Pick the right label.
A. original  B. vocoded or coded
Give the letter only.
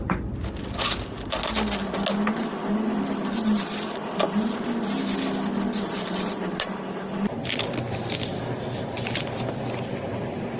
A